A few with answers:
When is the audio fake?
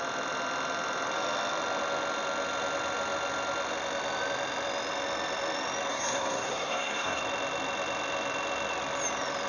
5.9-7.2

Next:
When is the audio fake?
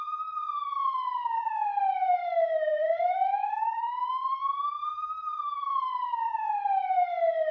2.2-5.8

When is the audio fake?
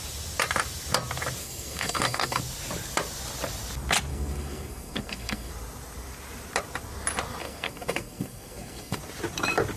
1.4-2.4; 4.1-5.5; 7.4-9.0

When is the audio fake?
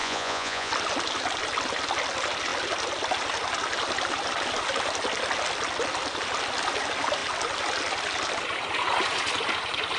0.0-0.7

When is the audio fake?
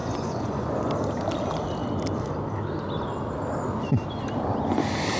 0.0-0.9